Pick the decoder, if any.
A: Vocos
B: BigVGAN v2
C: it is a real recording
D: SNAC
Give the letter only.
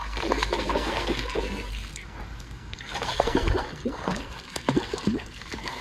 D